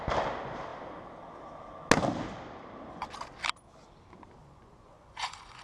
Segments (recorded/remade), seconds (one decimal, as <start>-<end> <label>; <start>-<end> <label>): 0.0-4.4 recorded; 4.4-5.6 remade